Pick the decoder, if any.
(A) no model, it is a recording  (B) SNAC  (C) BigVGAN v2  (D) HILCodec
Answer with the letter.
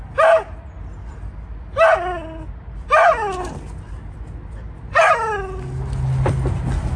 A